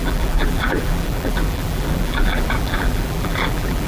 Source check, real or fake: fake